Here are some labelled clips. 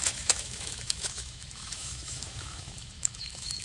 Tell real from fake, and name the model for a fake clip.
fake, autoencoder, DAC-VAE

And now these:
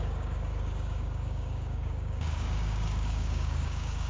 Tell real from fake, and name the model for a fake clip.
fake, codec, DAC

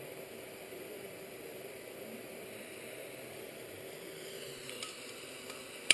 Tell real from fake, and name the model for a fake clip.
fake, vocoder, BigVGAN v2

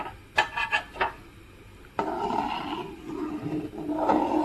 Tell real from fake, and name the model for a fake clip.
real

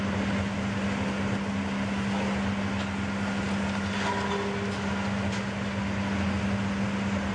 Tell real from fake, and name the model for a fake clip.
real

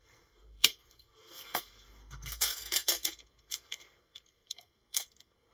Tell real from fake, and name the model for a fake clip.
fake, codec, SNAC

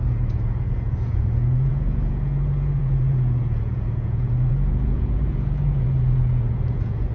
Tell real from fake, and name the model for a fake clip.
fake, vocoder, Vocos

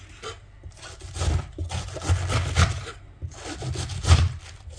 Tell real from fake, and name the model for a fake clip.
real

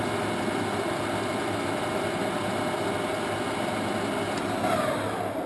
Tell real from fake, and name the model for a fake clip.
real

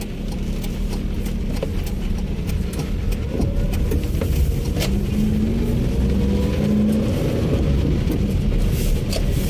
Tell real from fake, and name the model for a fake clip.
real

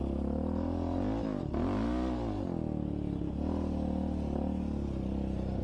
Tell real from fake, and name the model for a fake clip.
real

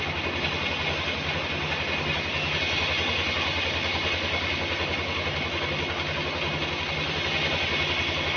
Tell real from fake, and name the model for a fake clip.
real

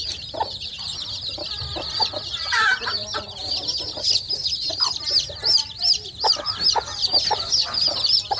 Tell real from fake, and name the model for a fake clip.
fake, vocoder, BigVGAN v2